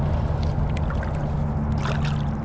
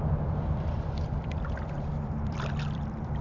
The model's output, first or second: second